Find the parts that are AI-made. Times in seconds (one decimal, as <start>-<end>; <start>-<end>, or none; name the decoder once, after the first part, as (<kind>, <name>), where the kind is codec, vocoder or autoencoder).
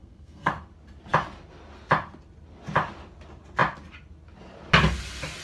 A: 0.0-0.5 (codec, SNAC)